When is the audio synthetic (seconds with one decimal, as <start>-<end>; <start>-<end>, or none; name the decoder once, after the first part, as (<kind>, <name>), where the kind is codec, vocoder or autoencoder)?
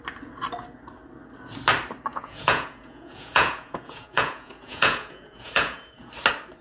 2.1-6.1 (vocoder, Vocos)